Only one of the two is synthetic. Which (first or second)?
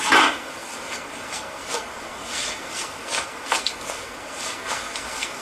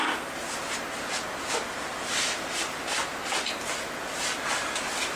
first